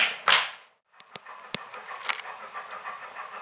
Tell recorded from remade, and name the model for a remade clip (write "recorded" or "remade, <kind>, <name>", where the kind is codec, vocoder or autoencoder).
recorded